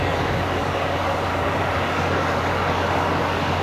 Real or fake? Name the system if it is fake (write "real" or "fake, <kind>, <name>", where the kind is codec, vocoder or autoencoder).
fake, codec, DAC